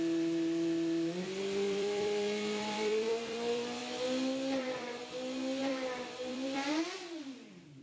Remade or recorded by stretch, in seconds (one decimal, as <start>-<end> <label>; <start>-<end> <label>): 0.0-3.8 remade; 3.8-4.6 recorded; 4.6-5.0 remade; 5.0-5.6 recorded; 5.6-7.8 remade